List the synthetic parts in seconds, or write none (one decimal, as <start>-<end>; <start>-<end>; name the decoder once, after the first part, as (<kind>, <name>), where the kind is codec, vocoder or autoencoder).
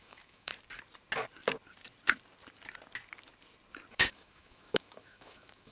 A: 0.0-0.5 (autoencoder, DAC-VAE); 3.9-5.7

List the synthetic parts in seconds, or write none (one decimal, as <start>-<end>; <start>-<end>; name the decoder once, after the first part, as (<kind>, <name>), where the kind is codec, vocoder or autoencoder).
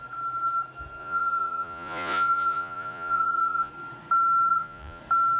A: 1.0-3.7 (vocoder, Vocos); 4.5-5.0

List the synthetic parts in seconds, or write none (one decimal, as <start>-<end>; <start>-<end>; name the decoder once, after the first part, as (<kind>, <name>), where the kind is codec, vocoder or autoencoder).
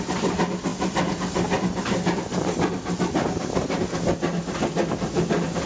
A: none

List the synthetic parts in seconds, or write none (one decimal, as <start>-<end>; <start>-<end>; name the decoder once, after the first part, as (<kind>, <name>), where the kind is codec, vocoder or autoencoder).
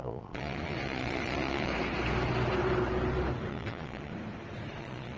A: 0.0-1.7 (vocoder, Vocos); 3.5-4.1; 4.8-5.2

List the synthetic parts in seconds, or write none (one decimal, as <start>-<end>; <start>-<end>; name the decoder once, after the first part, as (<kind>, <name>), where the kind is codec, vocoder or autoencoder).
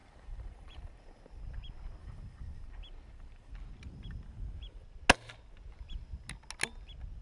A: 0.0-1.4 (vocoder, BigVGAN v2); 2.0-3.5